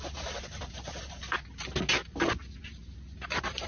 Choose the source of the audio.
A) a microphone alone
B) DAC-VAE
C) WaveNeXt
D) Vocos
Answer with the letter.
A